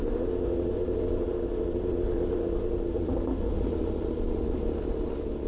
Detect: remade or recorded recorded